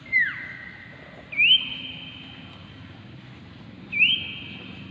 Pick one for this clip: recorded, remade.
recorded